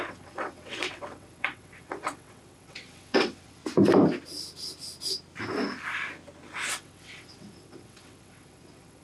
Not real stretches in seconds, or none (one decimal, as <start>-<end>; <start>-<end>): 0.0-3.6; 6.7-9.0